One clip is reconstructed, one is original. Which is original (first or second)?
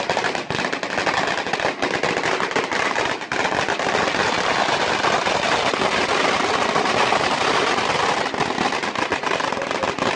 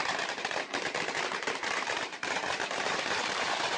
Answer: first